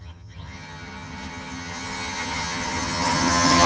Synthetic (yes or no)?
yes